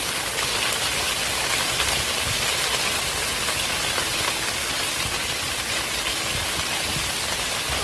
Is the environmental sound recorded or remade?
recorded